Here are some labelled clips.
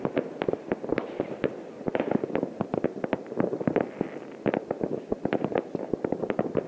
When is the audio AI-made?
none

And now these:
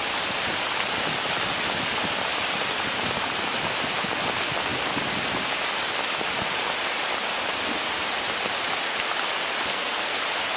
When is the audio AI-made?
9.7-10.2 (codec, SNAC)

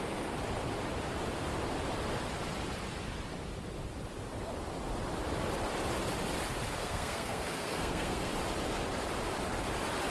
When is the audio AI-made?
6.8-8.3 (codec, SNAC)

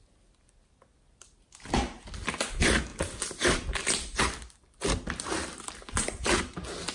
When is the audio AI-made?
none

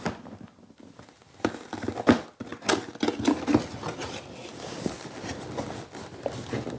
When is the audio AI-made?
none